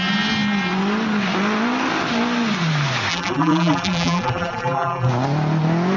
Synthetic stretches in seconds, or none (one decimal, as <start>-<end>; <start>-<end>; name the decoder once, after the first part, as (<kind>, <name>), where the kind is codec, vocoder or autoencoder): 3.1-5.1 (vocoder, BigVGAN v2)